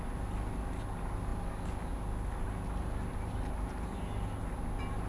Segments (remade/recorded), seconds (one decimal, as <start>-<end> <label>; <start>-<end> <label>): 0.0-5.1 recorded